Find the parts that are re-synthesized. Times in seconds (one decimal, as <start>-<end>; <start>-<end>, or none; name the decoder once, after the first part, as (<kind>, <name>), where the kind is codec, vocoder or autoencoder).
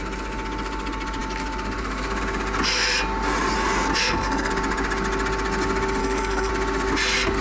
4.0-4.5 (codec, SNAC); 6.0-6.5